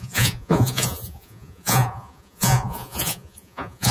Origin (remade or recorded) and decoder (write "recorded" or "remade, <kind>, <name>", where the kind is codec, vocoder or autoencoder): remade, vocoder, Vocos